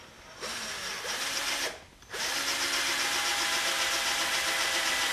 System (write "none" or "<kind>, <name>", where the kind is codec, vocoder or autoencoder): vocoder, BigVGAN v2